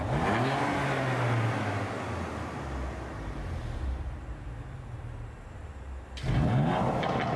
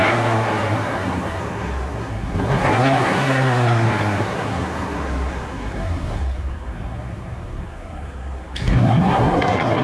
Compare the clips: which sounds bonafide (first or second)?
first